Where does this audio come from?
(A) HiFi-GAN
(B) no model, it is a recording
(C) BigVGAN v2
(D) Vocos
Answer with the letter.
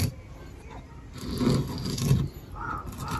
B